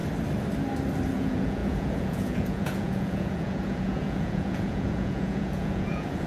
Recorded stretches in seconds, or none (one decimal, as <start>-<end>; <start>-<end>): 0.0-1.1